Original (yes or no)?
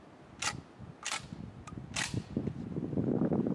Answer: yes